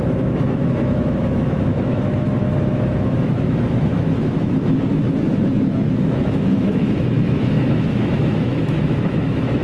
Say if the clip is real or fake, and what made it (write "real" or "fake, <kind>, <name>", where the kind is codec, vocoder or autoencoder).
fake, autoencoder, DAC-VAE